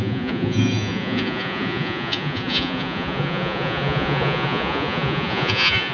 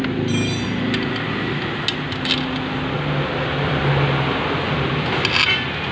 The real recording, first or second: second